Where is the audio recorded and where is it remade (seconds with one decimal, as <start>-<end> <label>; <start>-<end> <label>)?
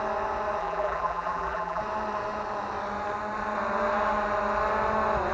0.0-0.6 recorded; 0.6-1.8 remade; 1.8-5.3 recorded